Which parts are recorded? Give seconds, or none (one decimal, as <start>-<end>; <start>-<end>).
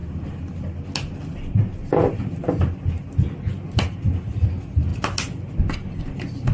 0.0-6.5